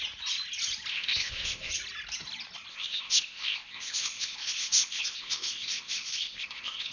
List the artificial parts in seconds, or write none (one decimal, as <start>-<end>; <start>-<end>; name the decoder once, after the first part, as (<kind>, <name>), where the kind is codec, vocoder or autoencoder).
0.9-1.7 (codec, ZipCodec); 2.7-6.9